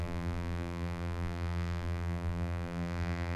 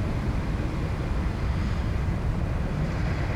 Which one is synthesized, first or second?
first